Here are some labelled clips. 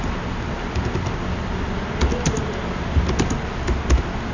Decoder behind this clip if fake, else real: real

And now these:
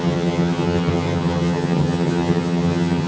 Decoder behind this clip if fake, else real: fake, vocoder, HiFi-GAN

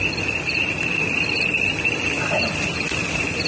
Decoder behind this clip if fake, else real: real